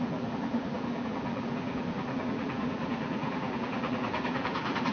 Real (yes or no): no